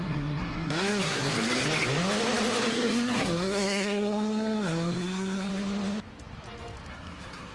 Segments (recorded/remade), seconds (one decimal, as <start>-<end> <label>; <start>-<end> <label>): 0.0-1.3 remade; 1.3-2.7 recorded; 2.7-5.5 remade; 5.5-6.9 recorded; 6.9-7.5 remade